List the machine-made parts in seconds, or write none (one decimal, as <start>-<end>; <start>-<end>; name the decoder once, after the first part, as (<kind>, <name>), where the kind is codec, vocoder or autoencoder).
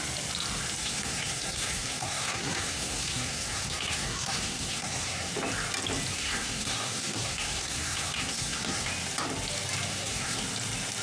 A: 0.8-5.3 (codec, SNAC); 6.1-8.9; 9.9-10.4